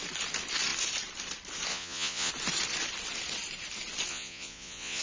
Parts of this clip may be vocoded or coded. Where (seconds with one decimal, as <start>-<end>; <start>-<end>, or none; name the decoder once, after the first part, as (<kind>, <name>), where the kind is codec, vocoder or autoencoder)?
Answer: 1.7-2.3 (vocoder, Vocos); 4.1-5.0